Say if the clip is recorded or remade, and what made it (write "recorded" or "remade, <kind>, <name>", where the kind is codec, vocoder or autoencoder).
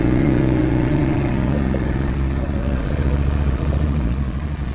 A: remade, vocoder, Vocos